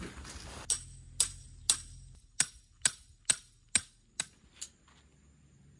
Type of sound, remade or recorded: recorded